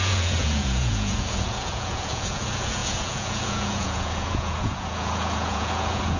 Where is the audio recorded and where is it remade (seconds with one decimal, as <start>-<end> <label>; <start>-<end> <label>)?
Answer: 0.0-6.2 remade